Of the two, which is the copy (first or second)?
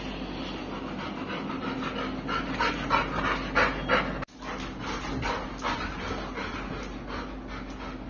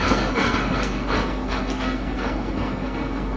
second